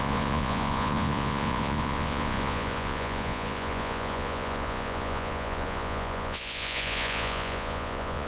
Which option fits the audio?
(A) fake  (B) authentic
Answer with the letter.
A